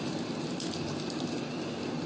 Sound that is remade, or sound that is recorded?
recorded